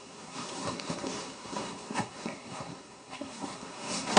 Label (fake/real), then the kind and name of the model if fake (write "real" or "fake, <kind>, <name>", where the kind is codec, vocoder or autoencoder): fake, codec, SNAC